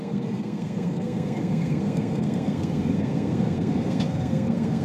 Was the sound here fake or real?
fake